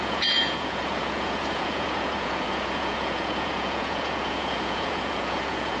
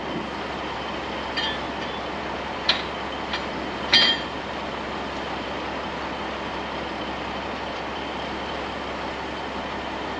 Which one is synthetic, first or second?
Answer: first